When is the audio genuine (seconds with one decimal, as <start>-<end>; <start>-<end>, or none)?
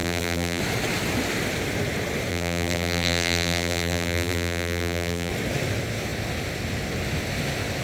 0.6-2.3; 5.3-7.8